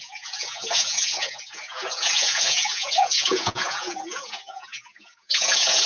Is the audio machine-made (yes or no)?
yes